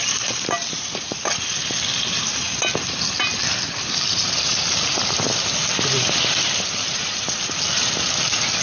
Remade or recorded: recorded